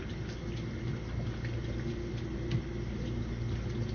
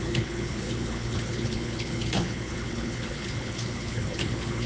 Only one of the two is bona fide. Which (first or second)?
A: first